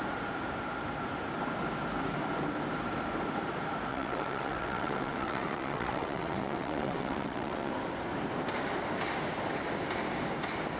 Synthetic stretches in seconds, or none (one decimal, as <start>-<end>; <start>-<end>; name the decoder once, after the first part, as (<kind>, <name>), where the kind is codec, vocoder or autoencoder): 3.9-7.7 (vocoder, WaveNeXt)